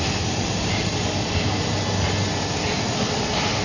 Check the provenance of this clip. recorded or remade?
recorded